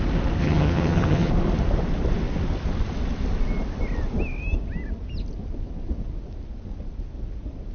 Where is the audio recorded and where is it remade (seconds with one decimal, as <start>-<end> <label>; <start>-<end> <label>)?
0.0-0.4 recorded; 0.4-1.3 remade; 1.3-7.7 recorded